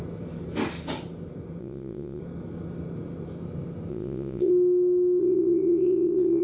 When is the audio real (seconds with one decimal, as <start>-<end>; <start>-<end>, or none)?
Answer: 0.0-1.6; 2.2-3.9; 4.5-5.2

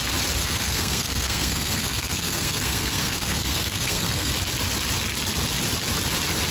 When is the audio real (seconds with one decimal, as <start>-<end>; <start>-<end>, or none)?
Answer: 0.0-0.4; 4.3-6.5

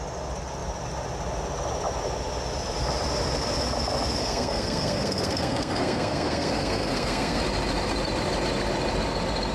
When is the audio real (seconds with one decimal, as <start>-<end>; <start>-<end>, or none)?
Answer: 0.0-4.2; 7.4-9.5

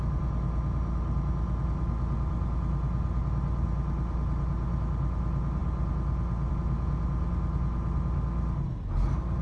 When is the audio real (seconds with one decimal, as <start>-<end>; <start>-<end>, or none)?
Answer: 0.0-9.4

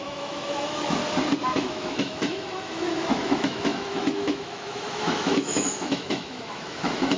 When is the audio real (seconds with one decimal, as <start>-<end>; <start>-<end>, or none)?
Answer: 1.0-1.6

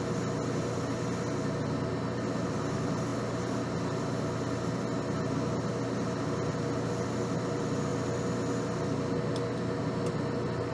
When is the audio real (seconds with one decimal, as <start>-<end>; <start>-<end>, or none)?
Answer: 0.0-10.7

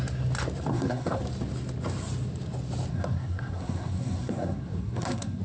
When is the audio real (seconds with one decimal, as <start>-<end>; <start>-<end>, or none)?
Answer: 0.0-0.7; 1.2-2.9